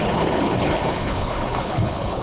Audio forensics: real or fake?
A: fake